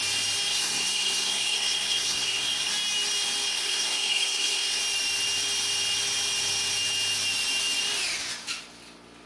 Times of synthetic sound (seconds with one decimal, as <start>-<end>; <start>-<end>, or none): 0.5-2.7; 3.5-4.8